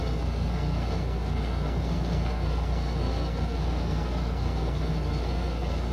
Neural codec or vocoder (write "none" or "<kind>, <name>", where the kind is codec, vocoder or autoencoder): codec, SNAC